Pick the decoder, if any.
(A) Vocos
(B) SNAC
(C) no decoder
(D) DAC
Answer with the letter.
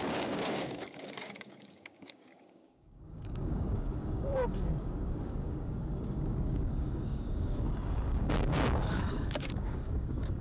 D